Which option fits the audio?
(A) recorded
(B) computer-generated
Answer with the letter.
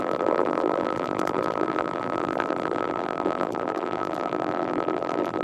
B